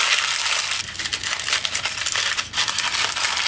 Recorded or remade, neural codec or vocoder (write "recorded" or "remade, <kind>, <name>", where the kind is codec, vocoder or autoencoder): recorded